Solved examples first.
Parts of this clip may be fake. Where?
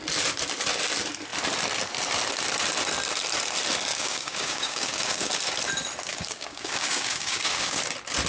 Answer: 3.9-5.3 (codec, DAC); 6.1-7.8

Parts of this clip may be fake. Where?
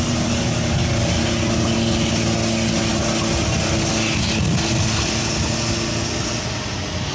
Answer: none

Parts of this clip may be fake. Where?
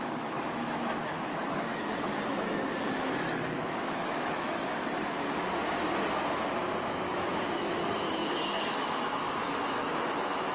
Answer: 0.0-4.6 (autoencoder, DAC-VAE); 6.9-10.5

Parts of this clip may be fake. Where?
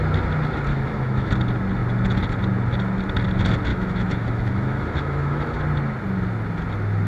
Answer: 0.7-1.3 (autoencoder, DAC-VAE); 3.7-5.6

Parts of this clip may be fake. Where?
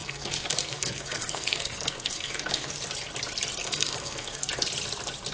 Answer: 0.0-2.7 (codec, SNAC); 3.6-4.5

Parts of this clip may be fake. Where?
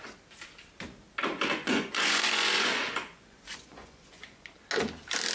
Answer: 1.3-4.5 (vocoder, Vocos)